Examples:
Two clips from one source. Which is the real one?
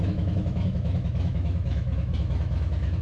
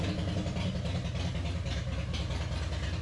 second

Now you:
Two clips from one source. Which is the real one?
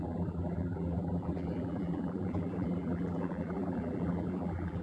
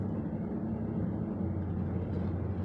second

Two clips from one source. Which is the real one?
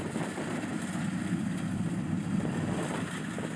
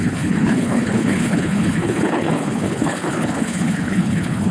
first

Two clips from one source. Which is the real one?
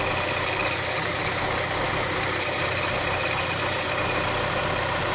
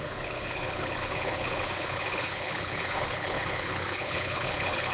first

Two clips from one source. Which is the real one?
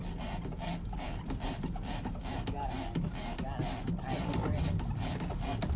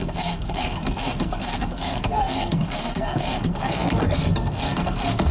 first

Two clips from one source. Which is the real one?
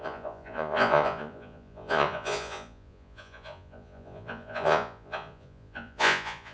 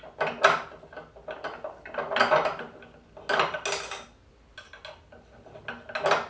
second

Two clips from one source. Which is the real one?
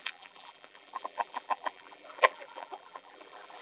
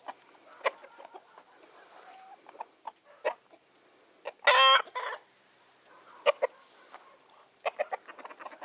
second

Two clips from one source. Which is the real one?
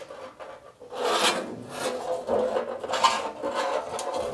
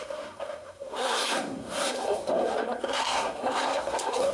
first